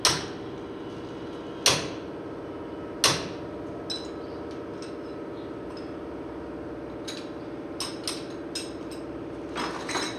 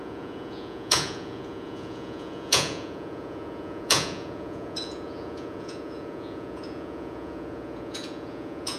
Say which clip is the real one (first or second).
first